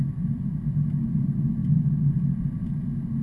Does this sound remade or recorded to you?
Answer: recorded